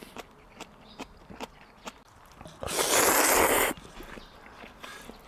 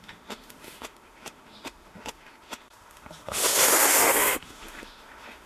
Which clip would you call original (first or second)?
first